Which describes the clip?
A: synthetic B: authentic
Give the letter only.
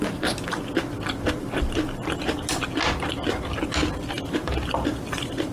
B